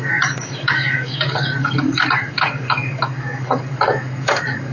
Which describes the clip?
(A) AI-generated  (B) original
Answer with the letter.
A